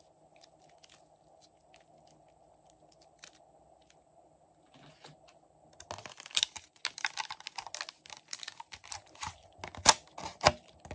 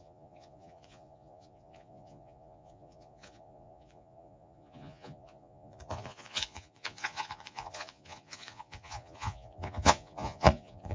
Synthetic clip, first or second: second